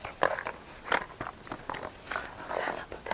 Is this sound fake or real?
real